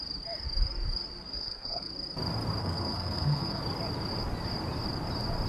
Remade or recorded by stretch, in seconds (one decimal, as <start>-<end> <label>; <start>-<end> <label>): 0.0-1.3 recorded; 1.3-1.9 remade; 1.9-2.6 recorded; 2.6-3.6 remade; 3.6-5.5 recorded